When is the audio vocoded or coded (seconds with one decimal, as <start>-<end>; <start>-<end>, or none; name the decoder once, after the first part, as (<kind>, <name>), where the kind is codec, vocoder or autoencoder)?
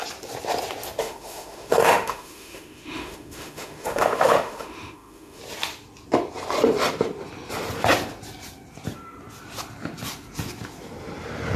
1.0-5.4 (autoencoder, DAC-VAE)